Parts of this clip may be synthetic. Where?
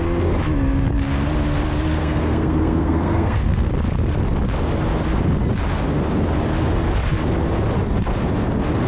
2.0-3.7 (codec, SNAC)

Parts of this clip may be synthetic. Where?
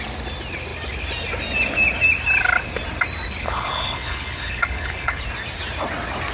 3.4-5.2 (codec, HILCodec)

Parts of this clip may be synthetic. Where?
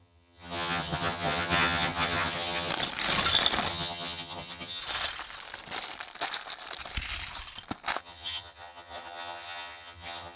0.0-2.7 (vocoder, HiFi-GAN); 3.7-4.8; 8.0-10.4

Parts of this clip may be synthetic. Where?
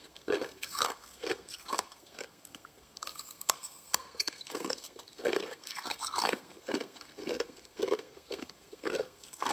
0.0-9.5 (codec, SNAC)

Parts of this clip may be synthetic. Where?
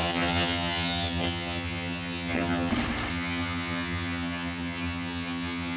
0.0-2.7 (vocoder, HiFi-GAN); 3.1-5.8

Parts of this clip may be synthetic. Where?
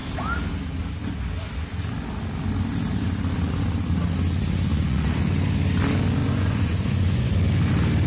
4.7-5.2 (vocoder, Vocos); 6.2-7.3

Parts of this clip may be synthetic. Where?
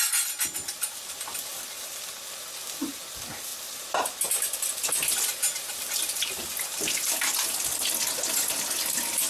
none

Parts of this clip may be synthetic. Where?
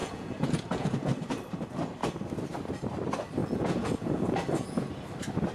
0.0-1.1 (vocoder, Vocos); 3.4-4.9